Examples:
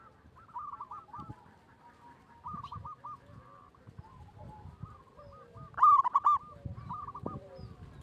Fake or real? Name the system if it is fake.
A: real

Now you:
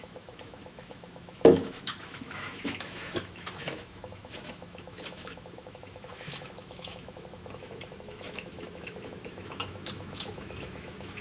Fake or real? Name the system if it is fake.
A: fake, autoencoder, DAC-VAE